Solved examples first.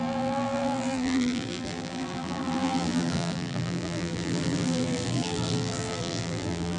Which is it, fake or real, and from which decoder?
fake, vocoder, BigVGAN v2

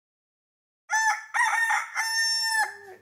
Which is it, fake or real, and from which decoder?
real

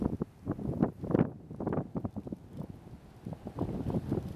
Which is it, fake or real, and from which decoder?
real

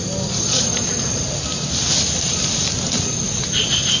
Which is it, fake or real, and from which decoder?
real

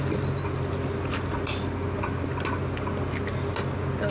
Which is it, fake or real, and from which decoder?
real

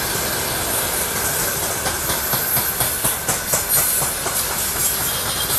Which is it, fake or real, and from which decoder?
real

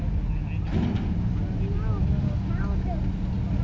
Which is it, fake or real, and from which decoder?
real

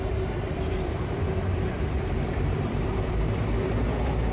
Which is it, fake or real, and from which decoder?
fake, vocoder, BigVGAN v2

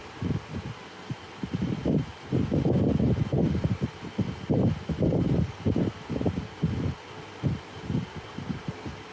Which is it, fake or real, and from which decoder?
fake, vocoder, BigVGAN v2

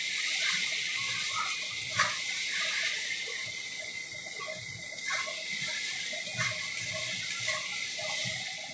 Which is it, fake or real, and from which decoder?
real